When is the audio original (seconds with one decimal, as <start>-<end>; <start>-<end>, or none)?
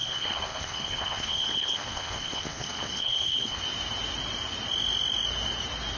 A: 3.6-6.0